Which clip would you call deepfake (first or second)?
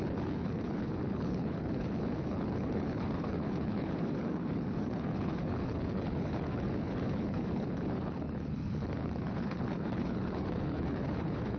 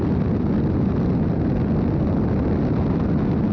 first